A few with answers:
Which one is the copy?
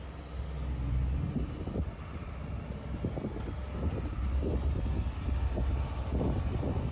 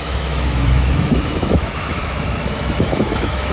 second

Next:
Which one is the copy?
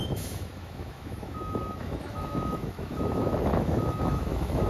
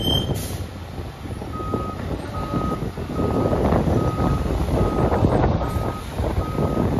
first